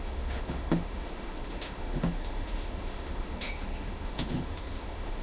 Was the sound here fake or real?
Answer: fake